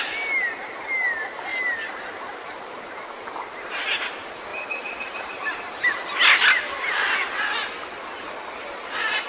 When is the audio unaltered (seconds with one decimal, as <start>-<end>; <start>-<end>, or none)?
0.0-4.5; 6.2-9.3